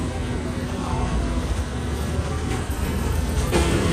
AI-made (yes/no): yes